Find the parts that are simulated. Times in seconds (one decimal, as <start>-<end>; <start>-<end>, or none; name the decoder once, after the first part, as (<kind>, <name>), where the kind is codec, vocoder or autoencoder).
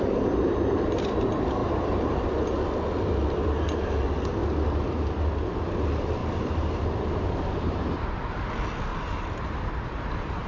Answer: 1.6-2.3 (vocoder, BigVGAN v2); 6.2-8.4; 8.9-10.5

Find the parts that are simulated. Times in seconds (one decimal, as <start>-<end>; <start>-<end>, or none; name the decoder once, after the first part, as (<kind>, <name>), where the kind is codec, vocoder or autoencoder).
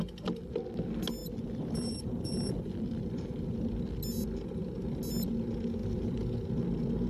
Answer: 1.2-3.7 (vocoder, BigVGAN v2); 5.8-6.6